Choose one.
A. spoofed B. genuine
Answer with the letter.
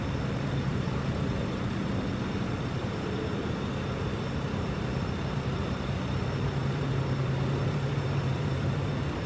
A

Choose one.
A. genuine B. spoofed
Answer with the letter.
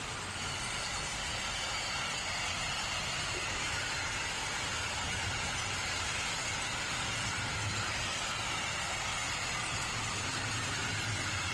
A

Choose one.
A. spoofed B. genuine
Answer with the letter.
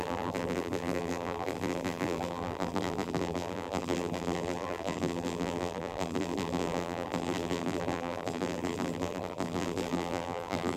A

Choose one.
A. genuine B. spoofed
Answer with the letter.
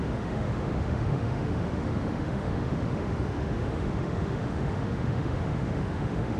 B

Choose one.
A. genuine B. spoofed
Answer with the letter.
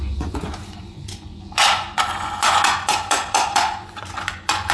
B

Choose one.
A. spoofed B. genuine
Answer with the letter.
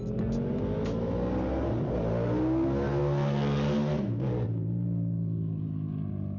B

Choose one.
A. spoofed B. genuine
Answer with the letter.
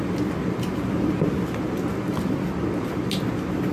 B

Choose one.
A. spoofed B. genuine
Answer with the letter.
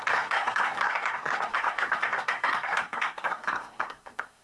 A